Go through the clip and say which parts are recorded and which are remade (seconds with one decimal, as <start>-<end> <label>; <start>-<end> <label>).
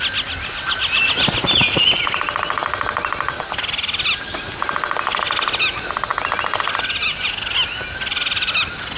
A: 0.0-9.0 recorded